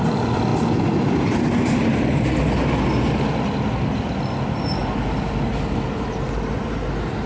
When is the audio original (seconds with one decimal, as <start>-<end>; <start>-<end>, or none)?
0.0-7.3